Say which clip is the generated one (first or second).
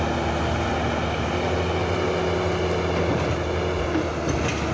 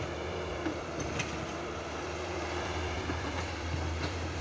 second